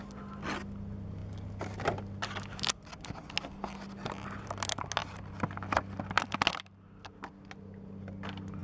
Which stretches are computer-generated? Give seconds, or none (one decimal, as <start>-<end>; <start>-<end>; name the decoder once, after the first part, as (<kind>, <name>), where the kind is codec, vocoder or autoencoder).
none